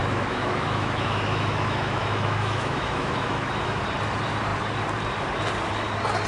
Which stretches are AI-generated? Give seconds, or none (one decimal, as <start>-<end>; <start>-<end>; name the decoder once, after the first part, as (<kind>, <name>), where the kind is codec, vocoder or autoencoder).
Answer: 0.0-3.8 (autoencoder, DAC-VAE)